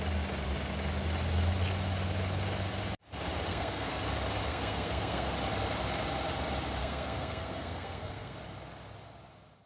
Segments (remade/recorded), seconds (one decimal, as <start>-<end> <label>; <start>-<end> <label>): 0.0-3.5 recorded; 3.5-4.0 remade; 4.0-4.5 recorded; 4.5-5.3 remade; 5.3-6.8 recorded; 6.8-8.4 remade; 8.4-9.7 recorded